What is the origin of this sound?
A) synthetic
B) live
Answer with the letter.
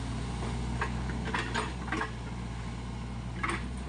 B